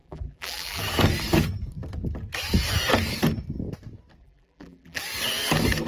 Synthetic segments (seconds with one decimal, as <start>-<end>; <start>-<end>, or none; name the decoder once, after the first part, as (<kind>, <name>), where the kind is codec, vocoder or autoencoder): 0.0-0.8 (vocoder, BigVGAN v2); 4.2-5.0